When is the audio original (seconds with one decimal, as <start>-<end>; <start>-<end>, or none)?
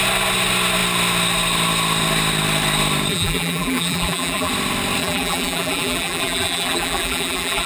0.0-3.1; 4.5-5.0